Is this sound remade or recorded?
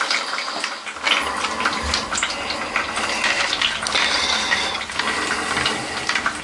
recorded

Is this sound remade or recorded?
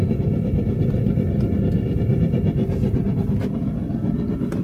recorded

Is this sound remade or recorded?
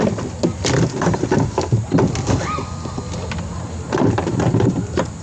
recorded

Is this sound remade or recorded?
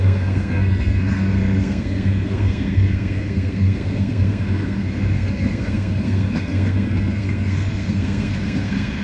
remade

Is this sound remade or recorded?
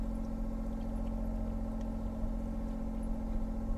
recorded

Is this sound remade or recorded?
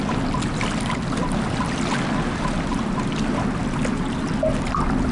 recorded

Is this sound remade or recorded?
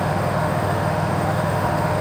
remade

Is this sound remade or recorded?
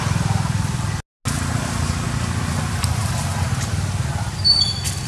recorded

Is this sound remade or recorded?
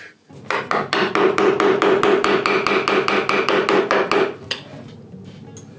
recorded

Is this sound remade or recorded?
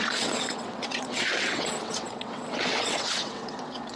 remade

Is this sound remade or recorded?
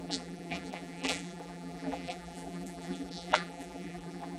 remade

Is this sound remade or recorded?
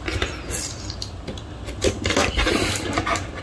recorded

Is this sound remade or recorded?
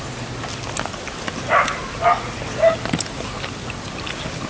recorded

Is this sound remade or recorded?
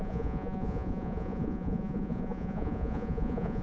remade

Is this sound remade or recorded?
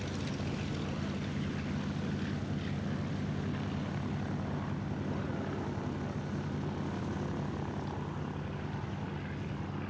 recorded